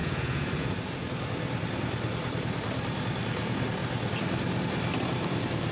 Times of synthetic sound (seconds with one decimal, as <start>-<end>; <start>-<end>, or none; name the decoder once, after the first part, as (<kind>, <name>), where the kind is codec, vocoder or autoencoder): 0.0-0.7 (vocoder, Vocos)